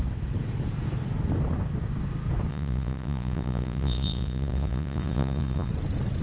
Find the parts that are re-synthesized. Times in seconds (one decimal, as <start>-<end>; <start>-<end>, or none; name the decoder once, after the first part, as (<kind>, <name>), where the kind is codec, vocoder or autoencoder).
2.5-5.7 (vocoder, Vocos)